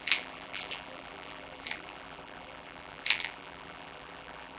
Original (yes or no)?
no